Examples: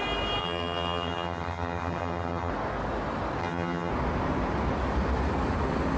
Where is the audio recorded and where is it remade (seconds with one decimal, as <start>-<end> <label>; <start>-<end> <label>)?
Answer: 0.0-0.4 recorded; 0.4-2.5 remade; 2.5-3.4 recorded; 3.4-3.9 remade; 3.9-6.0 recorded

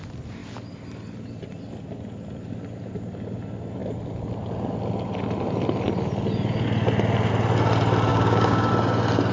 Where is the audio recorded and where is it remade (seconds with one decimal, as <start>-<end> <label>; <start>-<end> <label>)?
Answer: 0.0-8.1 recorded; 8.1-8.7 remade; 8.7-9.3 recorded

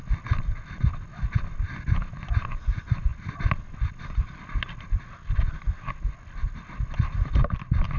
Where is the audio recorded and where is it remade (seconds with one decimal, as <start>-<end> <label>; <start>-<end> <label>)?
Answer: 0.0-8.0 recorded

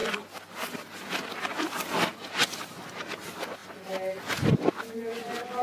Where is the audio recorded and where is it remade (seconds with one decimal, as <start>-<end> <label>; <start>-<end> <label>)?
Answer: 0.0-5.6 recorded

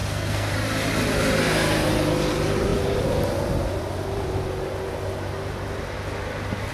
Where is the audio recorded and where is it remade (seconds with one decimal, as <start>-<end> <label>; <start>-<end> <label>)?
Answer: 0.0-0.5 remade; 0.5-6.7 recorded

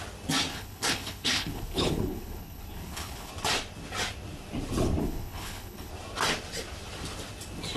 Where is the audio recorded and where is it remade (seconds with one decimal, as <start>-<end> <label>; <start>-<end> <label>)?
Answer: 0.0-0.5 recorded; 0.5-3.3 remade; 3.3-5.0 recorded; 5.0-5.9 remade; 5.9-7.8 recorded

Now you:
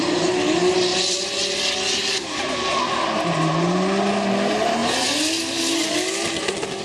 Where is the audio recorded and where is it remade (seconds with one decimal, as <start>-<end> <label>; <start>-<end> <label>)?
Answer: 0.0-6.8 recorded

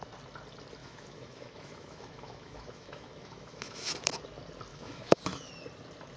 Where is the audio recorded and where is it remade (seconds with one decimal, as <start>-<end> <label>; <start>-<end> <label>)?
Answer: 0.0-0.8 recorded; 0.8-4.2 remade; 4.2-4.7 recorded; 4.7-5.5 remade; 5.5-6.2 recorded